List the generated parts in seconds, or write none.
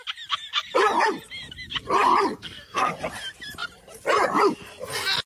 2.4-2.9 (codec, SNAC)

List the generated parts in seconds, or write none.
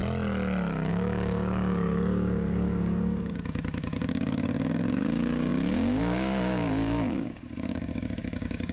0.9-8.7 (codec, DAC)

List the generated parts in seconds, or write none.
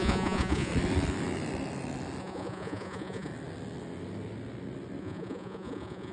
0.0-0.7 (vocoder, Vocos); 2.2-3.3; 5.0-6.1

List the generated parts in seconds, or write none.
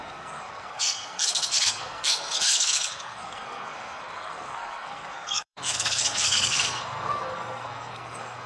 0.0-8.5 (codec, SNAC)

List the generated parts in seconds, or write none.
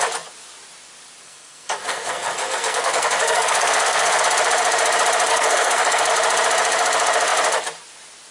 1.2-4.2 (codec, SNAC); 5.3-6.1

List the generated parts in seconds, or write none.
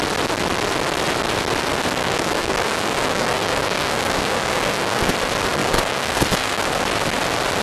2.0-5.1 (codec, DAC); 5.6-6.7